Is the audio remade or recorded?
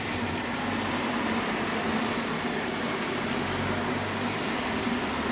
recorded